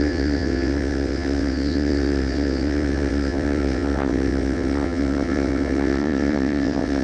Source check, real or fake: fake